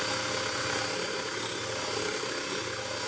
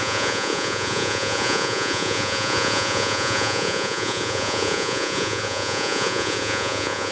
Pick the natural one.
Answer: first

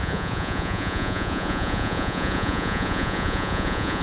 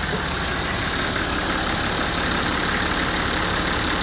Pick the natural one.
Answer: second